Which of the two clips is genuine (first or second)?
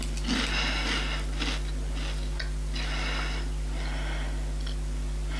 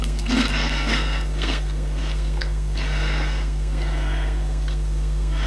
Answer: first